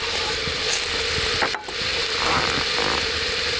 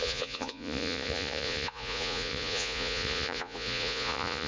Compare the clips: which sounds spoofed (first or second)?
second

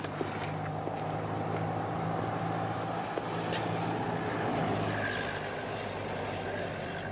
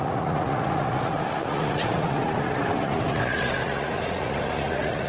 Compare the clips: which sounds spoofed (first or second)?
second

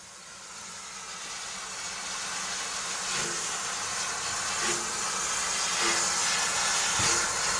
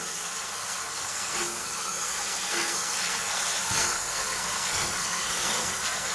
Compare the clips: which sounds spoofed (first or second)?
second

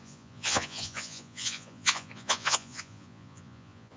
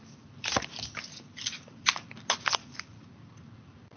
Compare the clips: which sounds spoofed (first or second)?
first